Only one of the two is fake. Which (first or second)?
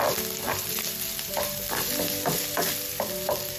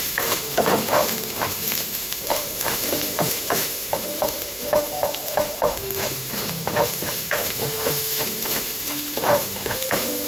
second